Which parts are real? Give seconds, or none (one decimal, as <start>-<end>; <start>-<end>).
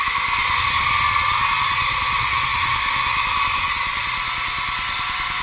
0.0-5.4